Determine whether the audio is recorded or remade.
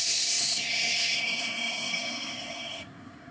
remade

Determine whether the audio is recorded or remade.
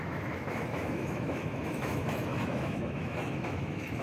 remade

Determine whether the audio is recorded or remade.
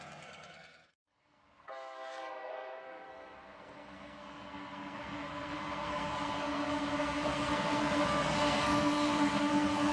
remade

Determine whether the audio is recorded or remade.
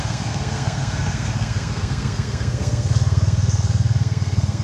remade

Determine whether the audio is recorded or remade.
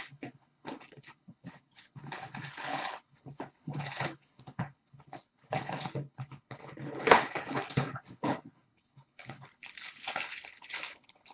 remade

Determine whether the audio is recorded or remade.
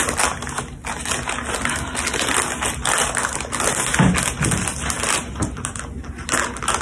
recorded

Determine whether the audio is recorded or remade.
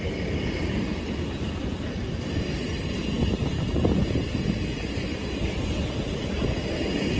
recorded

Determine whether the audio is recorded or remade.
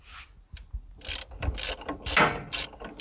recorded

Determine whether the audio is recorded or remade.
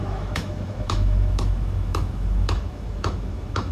remade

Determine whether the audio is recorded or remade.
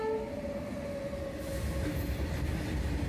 recorded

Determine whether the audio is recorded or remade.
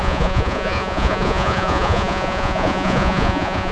remade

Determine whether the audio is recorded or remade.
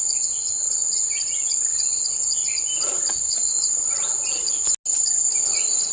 recorded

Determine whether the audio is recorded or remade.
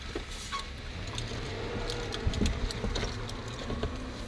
recorded